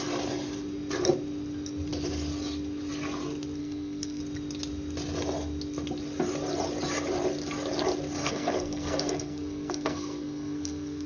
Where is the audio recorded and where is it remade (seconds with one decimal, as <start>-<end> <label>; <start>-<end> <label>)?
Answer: 0.0-3.6 recorded; 3.6-4.2 remade; 4.2-8.2 recorded; 8.2-11.1 remade